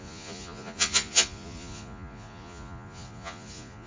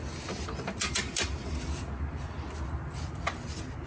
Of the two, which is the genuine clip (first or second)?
second